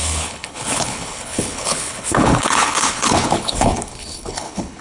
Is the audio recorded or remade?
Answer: remade